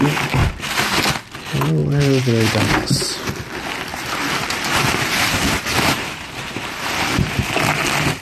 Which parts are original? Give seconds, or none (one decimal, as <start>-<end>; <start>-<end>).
0.0-0.4; 1.0-1.8; 2.6-3.9; 7.6-8.2